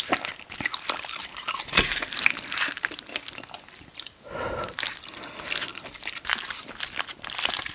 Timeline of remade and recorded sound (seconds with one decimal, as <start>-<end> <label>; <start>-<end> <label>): 0.0-7.7 recorded